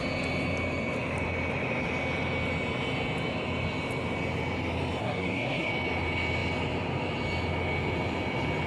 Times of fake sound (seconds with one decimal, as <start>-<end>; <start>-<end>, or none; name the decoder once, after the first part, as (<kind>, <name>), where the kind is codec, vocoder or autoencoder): 5.0-5.7 (codec, SNAC)